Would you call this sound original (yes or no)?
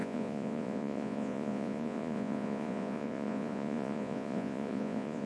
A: no